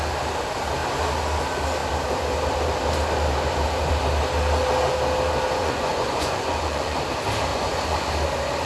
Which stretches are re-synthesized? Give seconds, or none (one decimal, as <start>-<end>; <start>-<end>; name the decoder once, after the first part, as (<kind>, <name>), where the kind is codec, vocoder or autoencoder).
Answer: 5.6-7.0 (vocoder, Vocos); 7.5-8.1